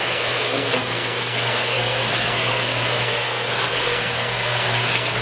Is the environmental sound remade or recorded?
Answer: remade